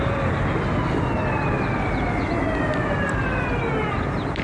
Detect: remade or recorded recorded